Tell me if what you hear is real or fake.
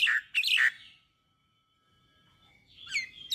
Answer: real